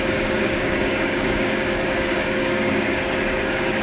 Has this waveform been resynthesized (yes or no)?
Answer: yes